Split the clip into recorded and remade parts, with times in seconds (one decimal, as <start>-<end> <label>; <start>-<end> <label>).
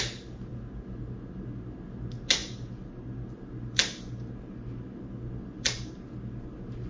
0.0-6.9 recorded